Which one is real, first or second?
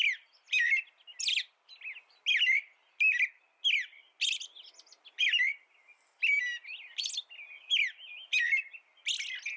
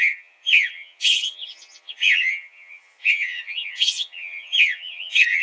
first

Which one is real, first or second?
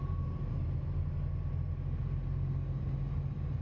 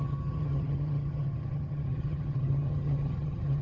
first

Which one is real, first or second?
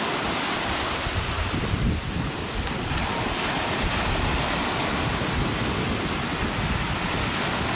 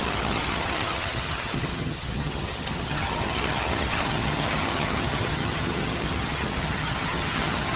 first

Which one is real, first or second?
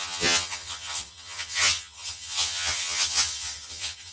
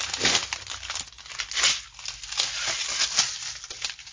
second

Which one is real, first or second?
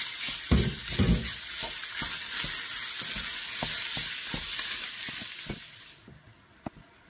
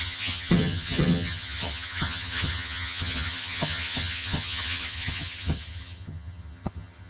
first